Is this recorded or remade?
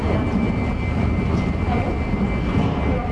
recorded